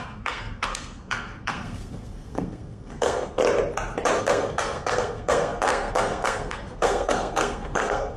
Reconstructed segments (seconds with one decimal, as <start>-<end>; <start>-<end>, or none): 0.0-3.4; 4.2-8.2